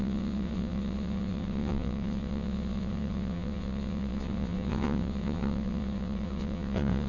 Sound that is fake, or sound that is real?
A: fake